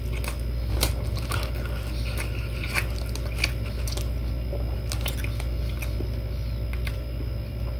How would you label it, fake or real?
real